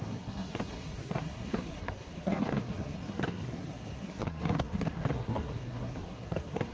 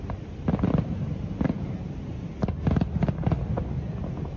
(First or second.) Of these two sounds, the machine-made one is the first